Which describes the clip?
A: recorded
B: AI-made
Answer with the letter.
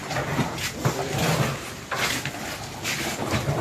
A